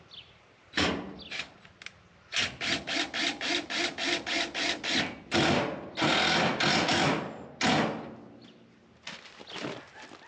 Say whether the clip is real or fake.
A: real